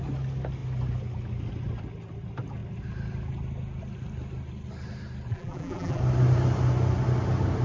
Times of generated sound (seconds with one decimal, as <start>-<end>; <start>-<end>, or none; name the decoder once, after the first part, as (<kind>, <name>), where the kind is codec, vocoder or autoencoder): 5.3-6.0 (vocoder, BigVGAN v2)